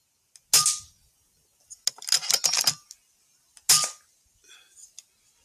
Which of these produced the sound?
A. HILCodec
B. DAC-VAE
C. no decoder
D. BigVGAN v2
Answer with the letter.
C